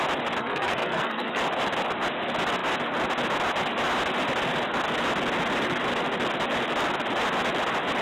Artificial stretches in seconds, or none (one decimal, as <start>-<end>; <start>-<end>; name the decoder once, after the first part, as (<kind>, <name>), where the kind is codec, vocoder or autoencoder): 0.4-1.4 (codec, SNAC)